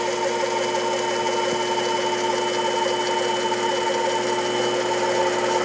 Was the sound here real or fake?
real